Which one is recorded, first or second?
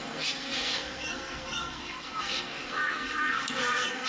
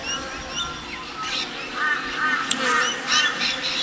second